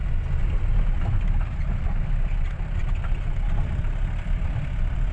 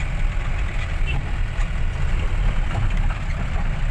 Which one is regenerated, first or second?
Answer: second